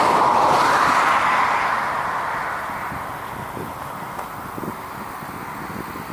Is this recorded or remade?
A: recorded